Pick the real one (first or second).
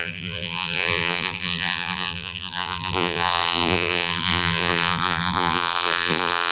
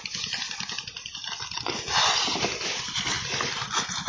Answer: second